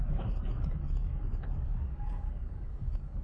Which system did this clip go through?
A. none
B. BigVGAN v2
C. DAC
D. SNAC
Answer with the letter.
C